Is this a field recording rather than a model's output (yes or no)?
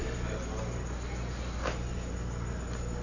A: yes